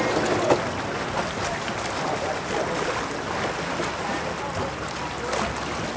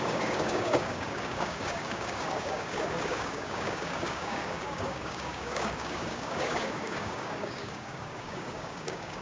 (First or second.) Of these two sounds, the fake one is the second